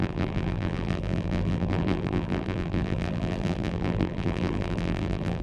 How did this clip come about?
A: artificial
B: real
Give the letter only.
A